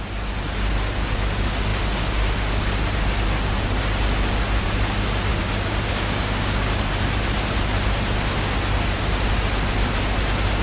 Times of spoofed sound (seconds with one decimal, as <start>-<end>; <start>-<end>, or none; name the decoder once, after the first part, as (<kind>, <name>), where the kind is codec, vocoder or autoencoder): 5.3-6.9 (codec, DAC)